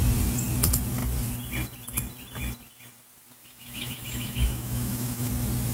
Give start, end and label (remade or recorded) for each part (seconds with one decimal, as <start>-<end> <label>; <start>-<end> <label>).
0.0-3.4 recorded; 3.4-5.3 remade; 5.3-5.7 recorded